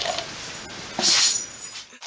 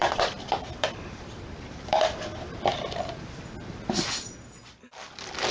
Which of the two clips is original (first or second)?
first